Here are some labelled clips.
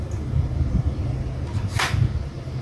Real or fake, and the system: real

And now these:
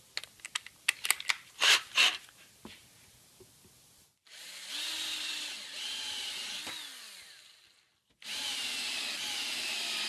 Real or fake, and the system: real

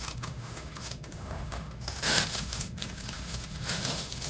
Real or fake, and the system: fake, autoencoder, DAC-VAE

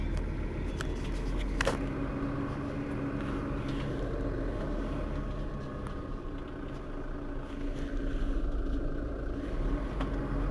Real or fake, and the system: real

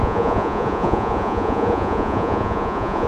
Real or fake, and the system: fake, vocoder, Vocos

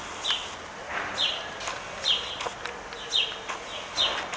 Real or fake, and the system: real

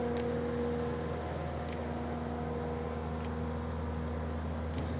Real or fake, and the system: real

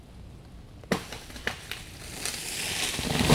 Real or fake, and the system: real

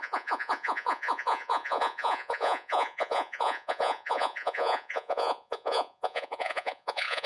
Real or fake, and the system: fake, vocoder, Vocos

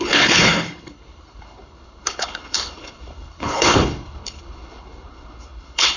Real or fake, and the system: fake, codec, HILCodec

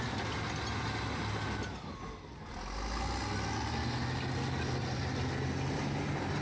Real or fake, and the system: real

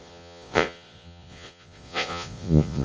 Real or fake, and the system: fake, vocoder, Vocos